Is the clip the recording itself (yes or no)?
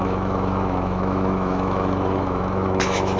no